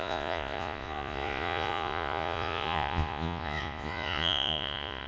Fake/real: fake